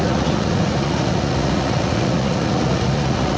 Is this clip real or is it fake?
fake